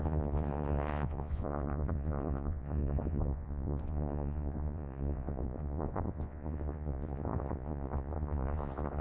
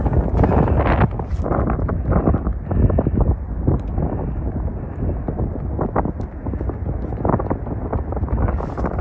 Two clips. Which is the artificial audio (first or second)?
first